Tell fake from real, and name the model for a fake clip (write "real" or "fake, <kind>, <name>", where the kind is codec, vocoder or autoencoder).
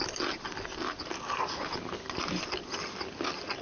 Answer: real